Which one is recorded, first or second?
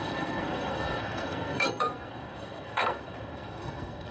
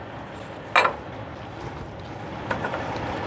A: second